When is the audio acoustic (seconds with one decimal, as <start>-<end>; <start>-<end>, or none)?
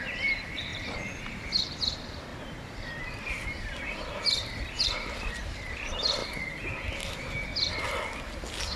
2.3-3.0; 6.2-8.8